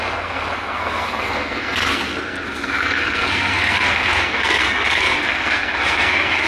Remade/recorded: remade